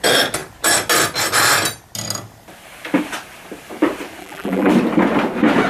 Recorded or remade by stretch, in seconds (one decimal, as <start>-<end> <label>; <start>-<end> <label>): 0.0-4.2 recorded; 4.2-4.7 remade; 4.7-5.7 recorded